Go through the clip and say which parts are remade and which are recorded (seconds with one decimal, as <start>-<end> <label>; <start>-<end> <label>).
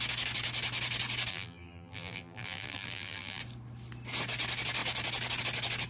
0.0-1.3 recorded; 1.3-3.4 remade; 3.4-5.9 recorded